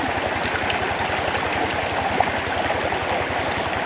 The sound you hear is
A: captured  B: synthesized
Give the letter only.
A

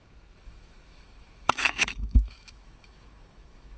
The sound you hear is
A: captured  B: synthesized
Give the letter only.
B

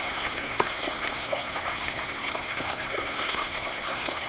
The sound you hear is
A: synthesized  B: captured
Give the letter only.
A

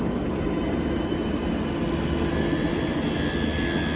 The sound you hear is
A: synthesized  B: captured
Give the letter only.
B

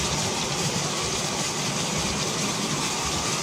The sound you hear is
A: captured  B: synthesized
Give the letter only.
A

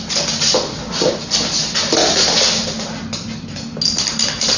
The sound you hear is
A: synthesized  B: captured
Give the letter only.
B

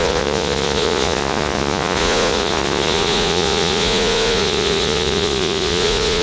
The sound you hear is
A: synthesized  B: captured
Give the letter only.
A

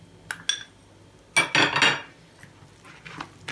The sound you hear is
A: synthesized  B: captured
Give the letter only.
B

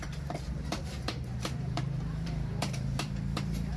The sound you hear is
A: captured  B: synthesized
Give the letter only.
B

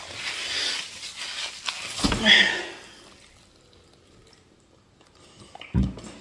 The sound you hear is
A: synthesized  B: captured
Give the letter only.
B